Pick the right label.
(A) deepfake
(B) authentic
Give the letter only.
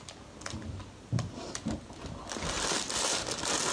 B